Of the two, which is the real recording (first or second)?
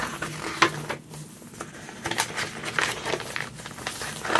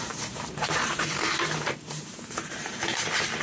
first